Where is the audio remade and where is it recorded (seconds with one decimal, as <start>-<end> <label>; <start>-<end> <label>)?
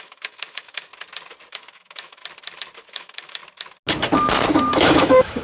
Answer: 0.0-0.9 remade; 0.9-1.5 recorded; 1.5-2.2 remade; 2.2-2.9 recorded; 2.9-3.4 remade; 3.4-4.7 recorded; 4.7-5.4 remade